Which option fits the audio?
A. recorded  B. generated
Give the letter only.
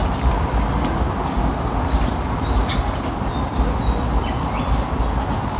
A